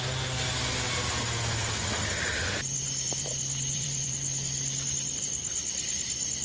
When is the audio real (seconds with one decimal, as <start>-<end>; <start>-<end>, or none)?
0.0-1.6; 4.1-6.4